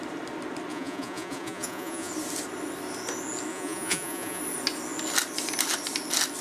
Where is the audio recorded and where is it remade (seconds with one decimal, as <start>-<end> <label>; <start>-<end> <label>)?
0.0-0.7 recorded; 0.7-2.1 remade; 2.1-3.5 recorded; 3.5-4.4 remade; 4.4-6.4 recorded